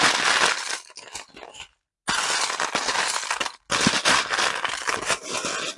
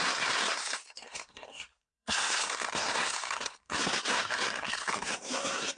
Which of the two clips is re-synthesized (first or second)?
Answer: second